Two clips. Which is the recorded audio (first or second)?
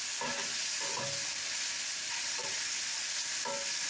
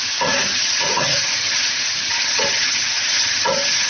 first